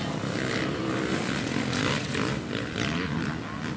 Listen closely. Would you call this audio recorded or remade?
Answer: recorded